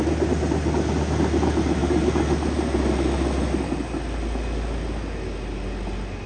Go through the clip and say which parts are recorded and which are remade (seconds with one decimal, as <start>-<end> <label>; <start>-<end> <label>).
0.0-6.3 recorded